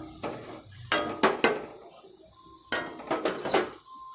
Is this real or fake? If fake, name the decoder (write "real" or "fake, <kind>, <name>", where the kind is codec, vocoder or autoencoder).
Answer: real